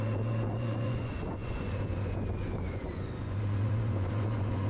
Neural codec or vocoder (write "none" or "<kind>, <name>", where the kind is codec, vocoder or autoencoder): vocoder, Vocos